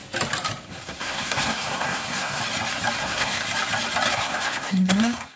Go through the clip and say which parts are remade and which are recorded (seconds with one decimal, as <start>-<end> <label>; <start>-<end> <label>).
0.0-0.7 recorded; 0.7-2.4 remade; 2.4-3.0 recorded; 3.0-3.4 remade; 3.4-4.1 recorded; 4.1-5.4 remade